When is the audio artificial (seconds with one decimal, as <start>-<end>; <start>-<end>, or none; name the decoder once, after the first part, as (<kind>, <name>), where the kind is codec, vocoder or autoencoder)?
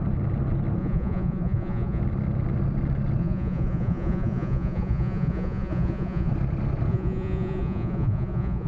0.8-2.0 (vocoder, Vocos); 3.2-6.3; 6.9-8.7